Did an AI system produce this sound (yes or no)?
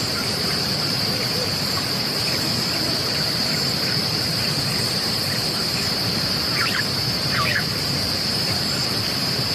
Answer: yes